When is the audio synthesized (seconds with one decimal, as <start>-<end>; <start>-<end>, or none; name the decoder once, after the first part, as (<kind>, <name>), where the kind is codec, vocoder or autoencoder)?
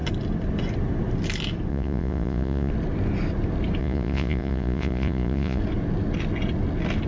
1.7-2.7 (vocoder, Vocos); 3.8-5.6